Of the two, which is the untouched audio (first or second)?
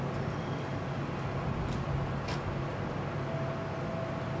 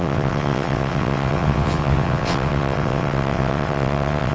first